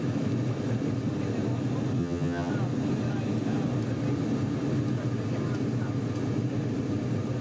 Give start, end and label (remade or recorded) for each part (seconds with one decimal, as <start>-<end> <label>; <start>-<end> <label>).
0.0-2.0 recorded; 2.0-2.5 remade; 2.5-7.4 recorded